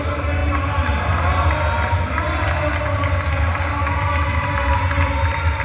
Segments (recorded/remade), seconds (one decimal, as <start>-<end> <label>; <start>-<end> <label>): 0.0-5.6 recorded